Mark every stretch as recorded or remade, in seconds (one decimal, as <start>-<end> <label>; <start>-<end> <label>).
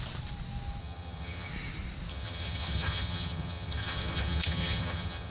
0.0-0.8 recorded; 0.8-1.5 remade; 1.5-2.1 recorded; 2.1-5.3 remade